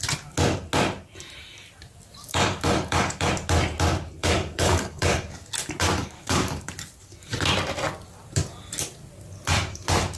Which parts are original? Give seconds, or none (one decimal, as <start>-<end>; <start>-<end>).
0.0-2.2; 3.3-4.2; 5.5-6.0; 6.7-10.2